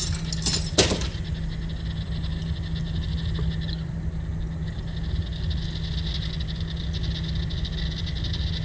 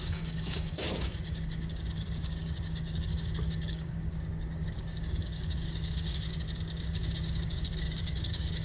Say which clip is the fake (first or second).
second